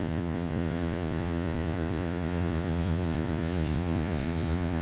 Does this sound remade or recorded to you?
remade